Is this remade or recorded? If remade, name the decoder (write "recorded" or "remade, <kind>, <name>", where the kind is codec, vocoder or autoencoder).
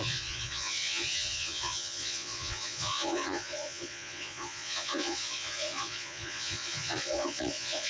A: remade, vocoder, Vocos